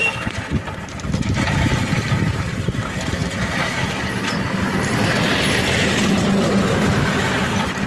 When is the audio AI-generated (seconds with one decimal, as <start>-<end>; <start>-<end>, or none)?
0.0-3.2; 6.4-7.9